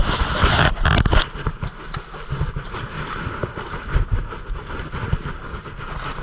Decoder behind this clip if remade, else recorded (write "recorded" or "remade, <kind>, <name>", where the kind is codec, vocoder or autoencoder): recorded